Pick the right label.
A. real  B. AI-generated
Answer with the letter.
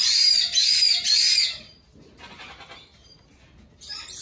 A